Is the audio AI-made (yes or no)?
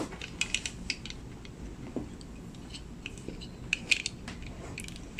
no